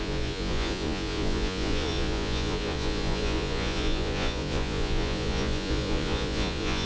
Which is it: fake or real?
fake